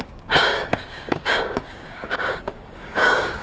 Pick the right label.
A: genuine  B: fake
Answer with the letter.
B